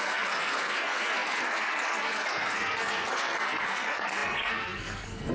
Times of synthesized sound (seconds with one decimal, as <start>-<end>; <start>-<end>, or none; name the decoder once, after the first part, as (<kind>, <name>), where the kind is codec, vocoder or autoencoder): 0.0-5.3 (codec, SNAC)